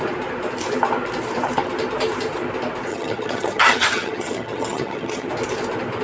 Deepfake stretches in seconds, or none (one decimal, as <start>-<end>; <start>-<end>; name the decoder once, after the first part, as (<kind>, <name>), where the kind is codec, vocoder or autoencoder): 2.9-5.3 (vocoder, HiFi-GAN)